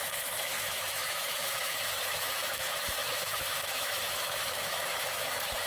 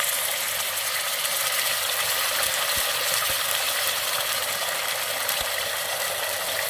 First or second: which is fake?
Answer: first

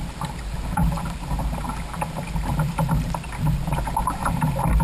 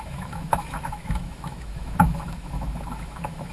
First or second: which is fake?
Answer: second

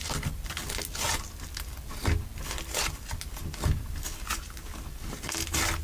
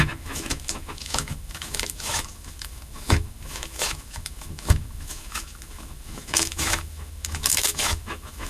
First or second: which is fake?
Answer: second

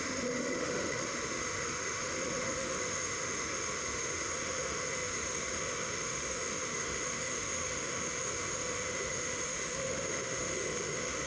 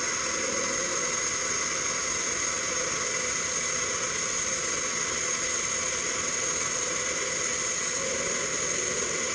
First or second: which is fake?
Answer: first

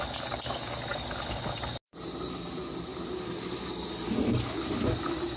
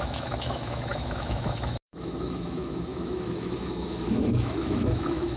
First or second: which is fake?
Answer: second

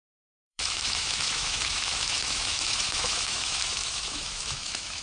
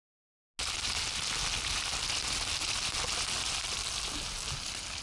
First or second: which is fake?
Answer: first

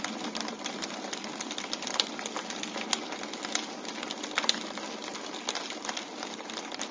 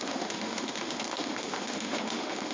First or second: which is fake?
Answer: second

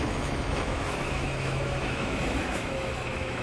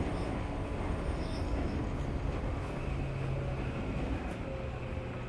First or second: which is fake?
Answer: first